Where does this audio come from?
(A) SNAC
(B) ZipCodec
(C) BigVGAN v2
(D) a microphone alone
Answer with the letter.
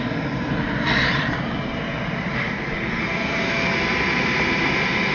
D